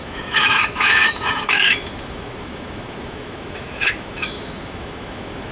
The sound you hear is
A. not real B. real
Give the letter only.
A